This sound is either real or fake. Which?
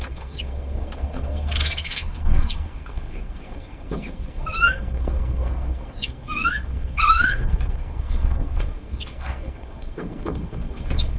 fake